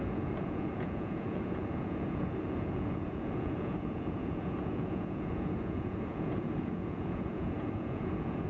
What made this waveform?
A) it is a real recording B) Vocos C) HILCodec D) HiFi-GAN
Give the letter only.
B